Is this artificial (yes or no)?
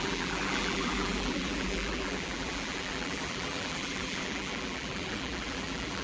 yes